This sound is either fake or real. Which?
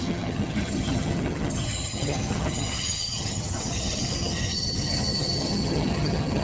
fake